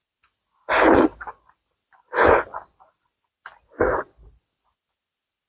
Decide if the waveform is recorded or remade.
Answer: recorded